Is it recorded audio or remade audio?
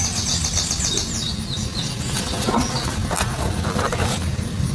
recorded